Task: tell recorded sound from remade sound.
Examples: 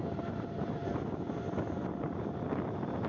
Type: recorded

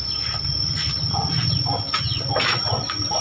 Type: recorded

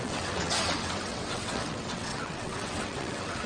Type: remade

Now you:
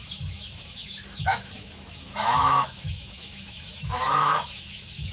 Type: remade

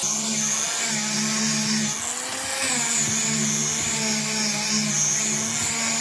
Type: recorded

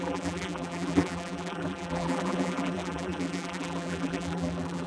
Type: remade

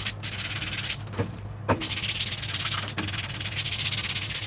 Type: recorded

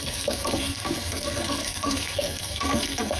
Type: remade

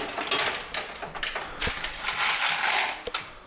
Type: recorded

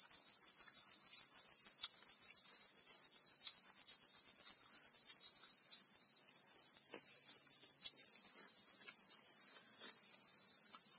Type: recorded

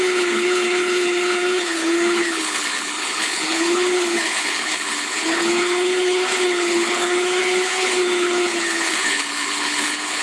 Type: remade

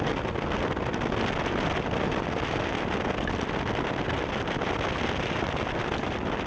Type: recorded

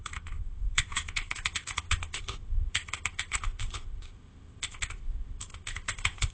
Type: remade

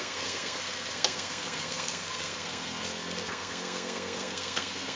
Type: remade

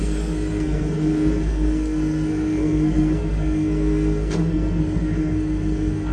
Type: remade